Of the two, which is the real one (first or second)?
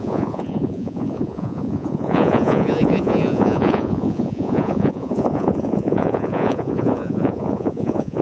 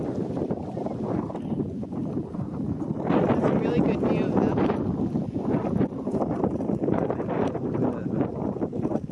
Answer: second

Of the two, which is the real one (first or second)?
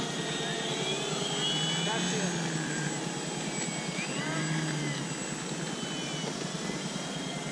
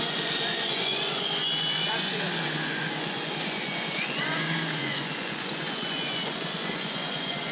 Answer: first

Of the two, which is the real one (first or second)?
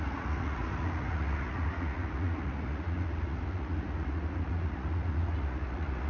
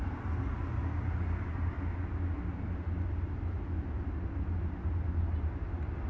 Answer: second